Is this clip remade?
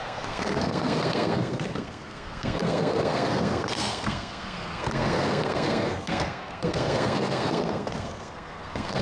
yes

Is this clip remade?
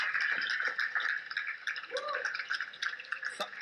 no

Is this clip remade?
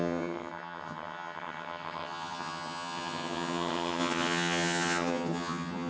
yes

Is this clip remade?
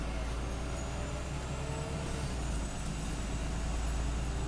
no